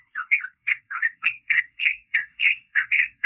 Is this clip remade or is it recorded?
remade